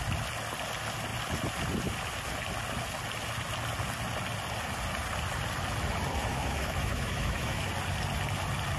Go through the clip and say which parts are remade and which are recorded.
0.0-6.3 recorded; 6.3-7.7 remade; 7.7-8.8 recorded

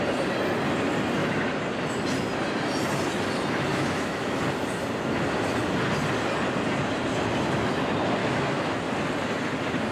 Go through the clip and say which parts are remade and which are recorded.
0.0-3.7 recorded; 3.7-4.4 remade; 4.4-8.2 recorded; 8.2-8.8 remade; 8.8-9.9 recorded

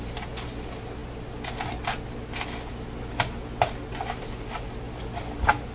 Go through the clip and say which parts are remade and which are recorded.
0.0-5.7 recorded